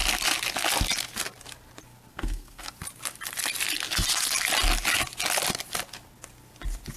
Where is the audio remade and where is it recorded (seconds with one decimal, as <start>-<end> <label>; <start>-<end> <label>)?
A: 0.0-2.1 recorded; 2.1-2.7 remade; 2.7-7.0 recorded